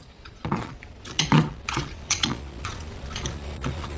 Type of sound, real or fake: fake